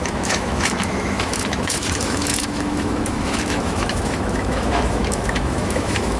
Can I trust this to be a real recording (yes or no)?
no